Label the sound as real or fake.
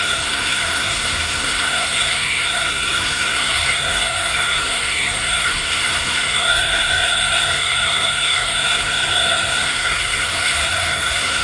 fake